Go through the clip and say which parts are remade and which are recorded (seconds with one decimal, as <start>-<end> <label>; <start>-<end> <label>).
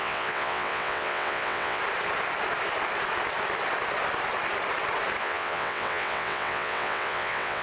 0.0-1.8 remade; 1.8-5.2 recorded; 5.2-7.6 remade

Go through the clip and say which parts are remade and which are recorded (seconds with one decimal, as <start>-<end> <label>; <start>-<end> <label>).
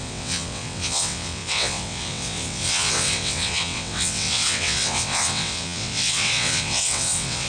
0.0-7.5 remade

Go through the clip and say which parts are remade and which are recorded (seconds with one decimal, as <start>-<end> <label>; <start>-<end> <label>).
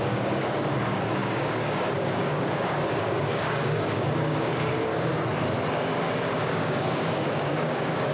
0.0-5.1 remade; 5.1-5.7 recorded; 5.7-8.1 remade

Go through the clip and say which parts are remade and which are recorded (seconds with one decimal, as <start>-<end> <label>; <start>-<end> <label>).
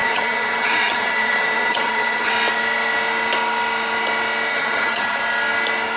0.0-2.3 remade; 2.3-4.5 recorded; 4.5-5.2 remade; 5.2-6.0 recorded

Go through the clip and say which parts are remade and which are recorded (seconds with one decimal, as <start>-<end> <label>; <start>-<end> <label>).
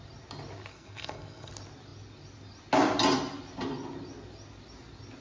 0.0-0.7 recorded; 0.7-1.5 remade; 1.5-5.2 recorded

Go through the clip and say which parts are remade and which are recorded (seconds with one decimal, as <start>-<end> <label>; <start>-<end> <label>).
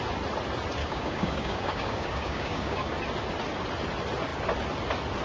0.0-0.8 recorded; 0.8-2.9 remade; 2.9-5.2 recorded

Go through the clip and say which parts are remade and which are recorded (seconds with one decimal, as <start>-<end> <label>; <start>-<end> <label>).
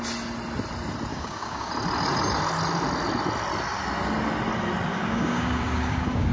0.0-1.1 recorded; 1.1-1.7 remade; 1.7-4.9 recorded; 4.9-6.3 remade